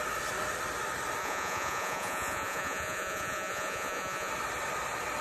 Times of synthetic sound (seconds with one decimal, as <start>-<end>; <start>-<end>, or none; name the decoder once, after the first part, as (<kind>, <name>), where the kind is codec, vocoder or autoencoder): 1.2-4.3 (vocoder, Vocos)